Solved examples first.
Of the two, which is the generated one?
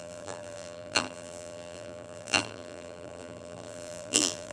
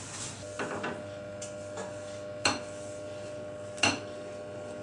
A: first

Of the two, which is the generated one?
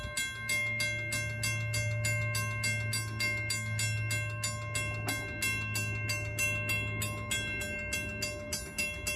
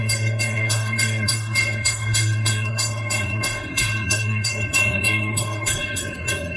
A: second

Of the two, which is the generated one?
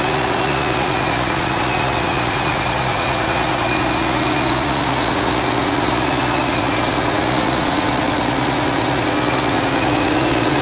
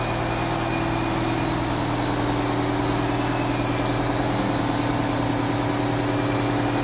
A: first